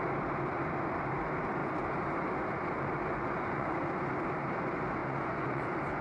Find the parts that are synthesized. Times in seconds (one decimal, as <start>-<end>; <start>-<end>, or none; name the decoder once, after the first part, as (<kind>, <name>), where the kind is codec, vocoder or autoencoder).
3.1-3.8 (vocoder, Vocos); 5.0-5.6